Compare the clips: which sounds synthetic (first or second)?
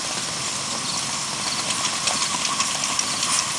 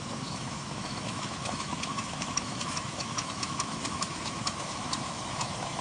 second